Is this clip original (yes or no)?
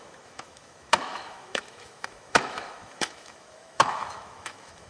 no